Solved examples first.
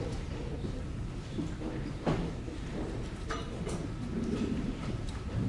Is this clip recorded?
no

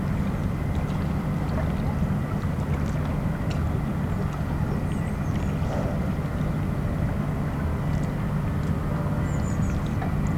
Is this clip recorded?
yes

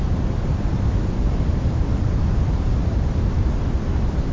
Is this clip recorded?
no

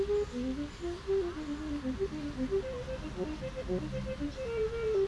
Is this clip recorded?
yes